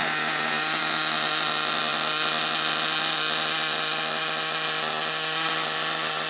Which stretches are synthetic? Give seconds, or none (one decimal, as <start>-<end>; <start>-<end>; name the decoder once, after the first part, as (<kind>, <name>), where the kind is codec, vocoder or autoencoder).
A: none